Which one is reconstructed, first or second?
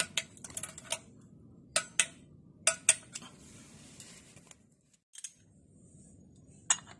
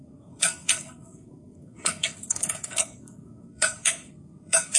second